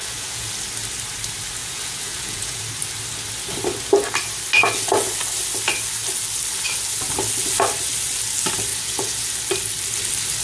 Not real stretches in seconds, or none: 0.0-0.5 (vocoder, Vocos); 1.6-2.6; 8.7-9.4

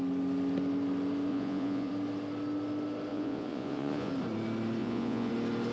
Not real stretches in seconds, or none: 1.3-1.9 (vocoder, Vocos); 3.1-4.1; 4.8-5.3

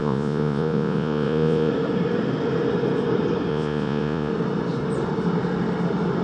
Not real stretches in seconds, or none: 0.0-1.7 (vocoder, Vocos); 3.5-4.3

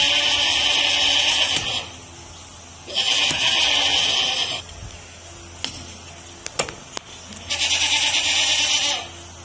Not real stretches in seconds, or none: none